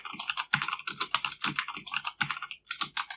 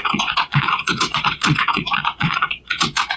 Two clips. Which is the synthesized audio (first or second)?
second